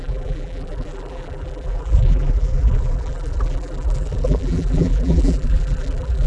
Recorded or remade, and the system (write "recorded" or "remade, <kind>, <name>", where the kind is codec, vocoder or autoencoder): remade, vocoder, BigVGAN v2